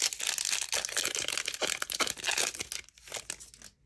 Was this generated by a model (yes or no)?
no